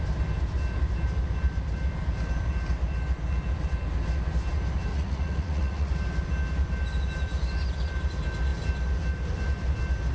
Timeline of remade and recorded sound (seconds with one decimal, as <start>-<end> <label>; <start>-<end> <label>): 0.0-4.9 recorded; 4.9-5.9 remade; 5.9-10.1 recorded